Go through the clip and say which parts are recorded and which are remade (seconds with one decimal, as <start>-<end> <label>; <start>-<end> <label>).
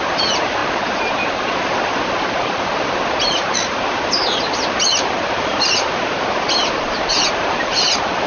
0.0-0.6 remade; 0.6-1.7 recorded; 1.7-8.3 remade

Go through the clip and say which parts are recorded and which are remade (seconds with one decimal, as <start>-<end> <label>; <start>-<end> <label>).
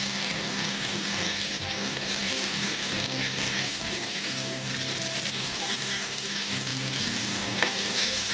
0.0-4.7 remade; 4.7-5.3 recorded; 5.3-8.3 remade